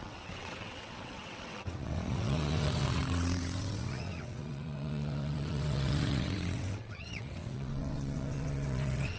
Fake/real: fake